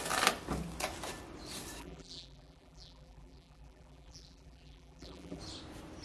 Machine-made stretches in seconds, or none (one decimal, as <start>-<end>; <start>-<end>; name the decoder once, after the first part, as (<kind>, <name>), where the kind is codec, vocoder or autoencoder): 1.8-5.4 (vocoder, BigVGAN v2)